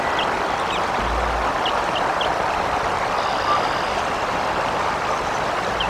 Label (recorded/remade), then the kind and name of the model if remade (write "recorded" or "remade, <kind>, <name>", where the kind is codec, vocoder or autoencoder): recorded